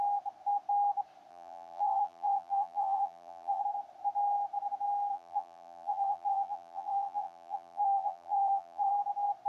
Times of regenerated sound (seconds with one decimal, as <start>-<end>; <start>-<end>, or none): 1.3-3.6; 5.1-8.9